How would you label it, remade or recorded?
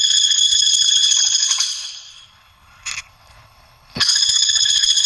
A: remade